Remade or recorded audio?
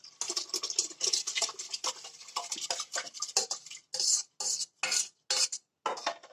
recorded